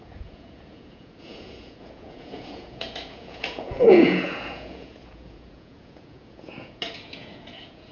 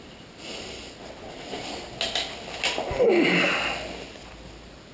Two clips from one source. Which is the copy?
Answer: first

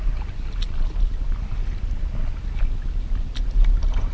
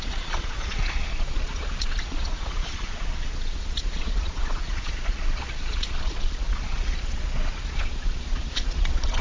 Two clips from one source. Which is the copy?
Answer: second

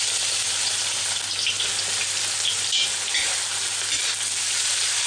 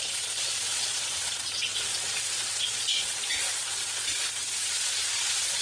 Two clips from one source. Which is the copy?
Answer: second